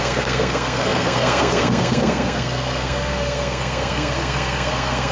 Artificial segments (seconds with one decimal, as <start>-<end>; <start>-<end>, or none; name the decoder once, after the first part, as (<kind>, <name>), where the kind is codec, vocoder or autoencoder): 0.0-5.1 (codec, SNAC)